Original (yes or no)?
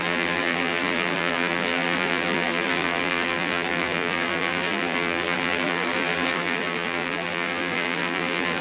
no